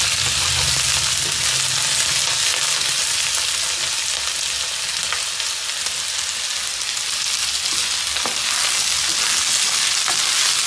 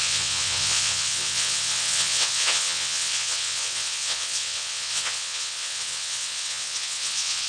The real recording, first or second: first